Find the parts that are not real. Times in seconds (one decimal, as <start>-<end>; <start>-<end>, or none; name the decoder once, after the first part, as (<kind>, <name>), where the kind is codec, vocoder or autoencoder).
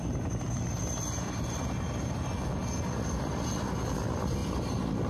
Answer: none